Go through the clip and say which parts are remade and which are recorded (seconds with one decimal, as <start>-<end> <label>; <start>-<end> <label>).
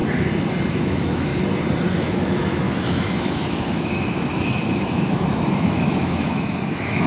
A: 0.0-0.7 recorded; 0.7-1.3 remade; 1.3-2.0 recorded; 2.0-7.1 remade